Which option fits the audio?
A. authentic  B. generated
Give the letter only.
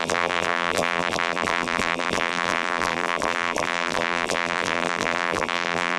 B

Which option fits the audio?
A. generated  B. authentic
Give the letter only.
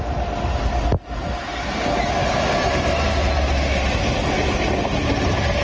B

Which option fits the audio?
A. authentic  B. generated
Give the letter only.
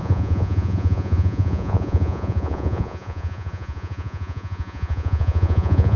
B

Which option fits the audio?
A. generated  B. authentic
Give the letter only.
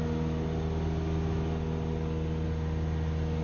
B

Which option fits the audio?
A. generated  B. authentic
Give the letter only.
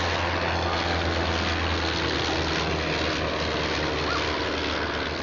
B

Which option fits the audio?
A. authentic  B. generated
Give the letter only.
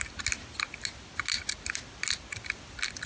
A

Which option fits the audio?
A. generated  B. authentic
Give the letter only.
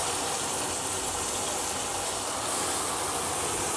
B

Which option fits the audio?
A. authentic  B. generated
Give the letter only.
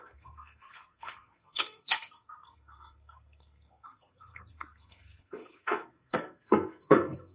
B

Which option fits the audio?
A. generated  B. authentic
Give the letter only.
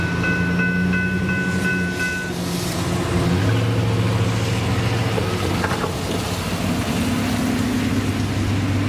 B